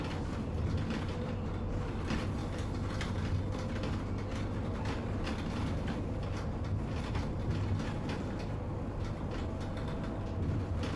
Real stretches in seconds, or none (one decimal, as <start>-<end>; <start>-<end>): 0.0-11.0